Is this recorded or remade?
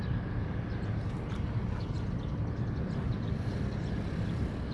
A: recorded